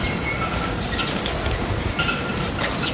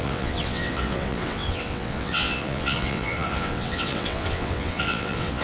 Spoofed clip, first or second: second